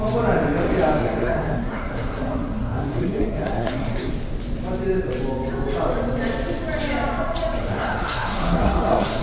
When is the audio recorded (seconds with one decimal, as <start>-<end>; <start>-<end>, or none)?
0.0-1.0; 4.1-7.6

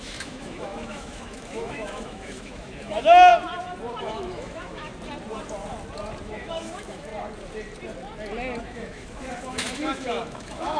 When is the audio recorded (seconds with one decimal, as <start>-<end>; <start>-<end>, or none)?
3.3-4.0; 4.9-6.2; 7.1-8.6